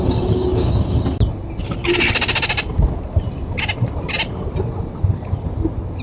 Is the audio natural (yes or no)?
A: yes